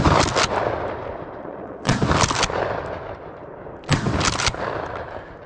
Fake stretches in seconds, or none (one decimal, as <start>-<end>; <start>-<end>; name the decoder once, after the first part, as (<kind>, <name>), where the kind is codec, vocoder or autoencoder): 1.4-2.0 (vocoder, Vocos)